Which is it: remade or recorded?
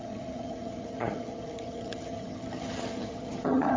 remade